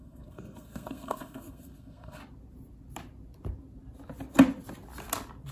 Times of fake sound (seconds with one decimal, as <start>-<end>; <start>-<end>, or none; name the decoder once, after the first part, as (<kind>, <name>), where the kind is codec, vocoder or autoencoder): 0.0-2.2 (codec, SNAC)